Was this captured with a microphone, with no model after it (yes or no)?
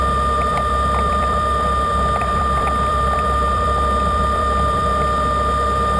no